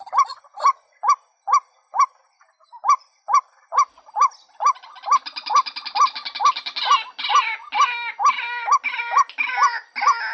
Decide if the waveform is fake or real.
real